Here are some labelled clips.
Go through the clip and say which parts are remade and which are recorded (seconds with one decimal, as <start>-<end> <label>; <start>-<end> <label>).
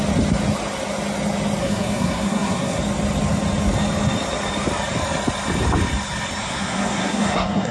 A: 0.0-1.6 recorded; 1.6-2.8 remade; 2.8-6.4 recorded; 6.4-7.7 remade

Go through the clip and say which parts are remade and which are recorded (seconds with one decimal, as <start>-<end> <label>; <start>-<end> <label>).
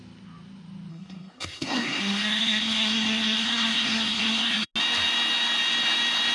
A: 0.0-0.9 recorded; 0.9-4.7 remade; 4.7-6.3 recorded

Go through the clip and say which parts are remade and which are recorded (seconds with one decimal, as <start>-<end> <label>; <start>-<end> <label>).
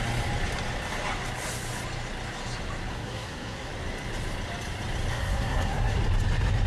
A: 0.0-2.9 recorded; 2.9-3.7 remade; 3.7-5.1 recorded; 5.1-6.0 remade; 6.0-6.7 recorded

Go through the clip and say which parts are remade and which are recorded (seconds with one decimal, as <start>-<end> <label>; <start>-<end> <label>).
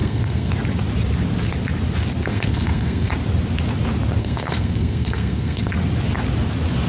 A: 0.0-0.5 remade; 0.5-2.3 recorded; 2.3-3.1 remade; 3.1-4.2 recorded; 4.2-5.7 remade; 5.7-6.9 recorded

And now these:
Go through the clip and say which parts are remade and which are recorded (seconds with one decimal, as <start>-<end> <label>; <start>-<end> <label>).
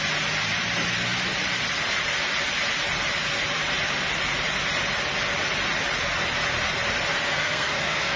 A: 0.0-7.3 recorded; 7.3-8.2 remade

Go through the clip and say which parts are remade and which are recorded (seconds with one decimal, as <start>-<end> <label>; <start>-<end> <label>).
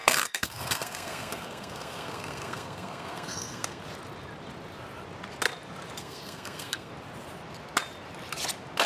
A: 0.0-3.8 remade; 3.8-6.0 recorded; 6.0-6.9 remade; 6.9-8.9 recorded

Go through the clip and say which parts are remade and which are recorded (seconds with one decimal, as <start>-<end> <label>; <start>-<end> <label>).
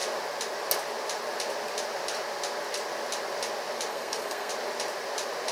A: 0.0-3.9 recorded; 3.9-4.5 remade; 4.5-5.5 recorded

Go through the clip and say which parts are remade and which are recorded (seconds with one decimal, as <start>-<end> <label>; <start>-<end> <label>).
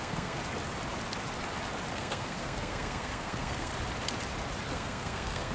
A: 0.0-0.4 remade; 0.4-1.9 recorded; 1.9-3.7 remade; 3.7-4.7 recorded; 4.7-5.5 remade